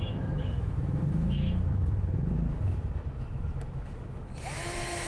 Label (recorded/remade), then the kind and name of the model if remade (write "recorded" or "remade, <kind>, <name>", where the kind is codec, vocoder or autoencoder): remade, autoencoder, DAC-VAE